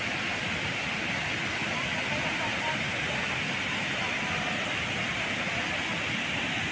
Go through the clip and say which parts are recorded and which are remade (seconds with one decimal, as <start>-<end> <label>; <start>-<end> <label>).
0.0-6.7 recorded